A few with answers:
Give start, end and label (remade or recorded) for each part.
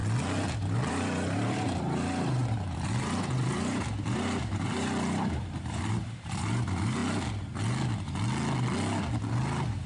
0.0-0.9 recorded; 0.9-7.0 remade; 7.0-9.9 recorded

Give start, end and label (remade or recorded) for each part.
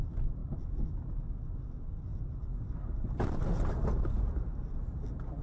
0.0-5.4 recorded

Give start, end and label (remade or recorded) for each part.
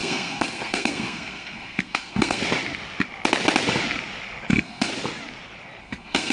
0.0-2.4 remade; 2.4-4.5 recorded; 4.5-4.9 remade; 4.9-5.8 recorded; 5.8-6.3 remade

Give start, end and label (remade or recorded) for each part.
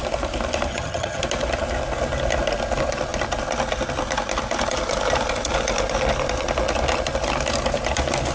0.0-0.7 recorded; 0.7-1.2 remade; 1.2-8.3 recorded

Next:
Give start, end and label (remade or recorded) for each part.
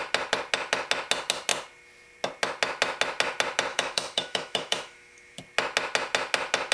0.0-3.7 recorded; 3.7-5.4 remade; 5.4-6.7 recorded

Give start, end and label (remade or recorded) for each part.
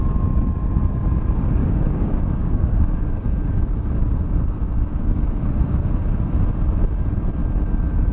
0.0-1.6 recorded; 1.6-4.2 remade; 4.2-8.1 recorded